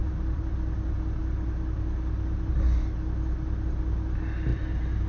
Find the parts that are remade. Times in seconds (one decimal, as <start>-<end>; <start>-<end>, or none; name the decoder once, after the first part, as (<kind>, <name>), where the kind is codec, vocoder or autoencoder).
0.0-0.5 (vocoder, BigVGAN v2)

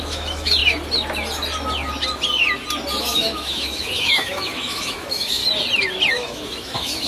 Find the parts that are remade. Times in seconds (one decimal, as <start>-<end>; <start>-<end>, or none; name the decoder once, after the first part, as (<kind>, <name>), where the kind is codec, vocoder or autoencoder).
0.0-0.6 (autoencoder, DAC-VAE); 3.0-5.4; 6.1-7.1

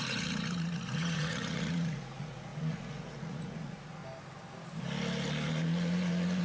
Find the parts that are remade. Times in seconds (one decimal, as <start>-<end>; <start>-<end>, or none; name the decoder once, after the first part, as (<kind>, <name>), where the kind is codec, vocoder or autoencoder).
0.0-4.0 (vocoder, Vocos)